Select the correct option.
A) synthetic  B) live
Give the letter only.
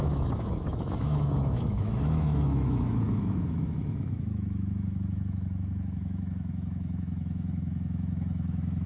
A